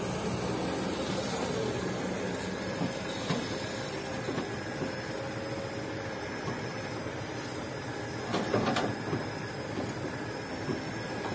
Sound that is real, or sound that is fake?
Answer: real